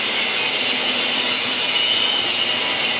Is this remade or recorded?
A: recorded